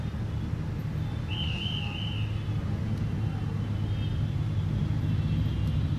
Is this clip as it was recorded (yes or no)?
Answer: yes